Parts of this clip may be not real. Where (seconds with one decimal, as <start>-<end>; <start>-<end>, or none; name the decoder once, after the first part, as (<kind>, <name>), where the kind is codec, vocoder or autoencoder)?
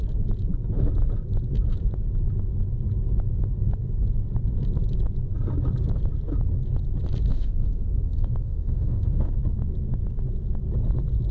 7.3-9.3 (autoencoder, DAC-VAE)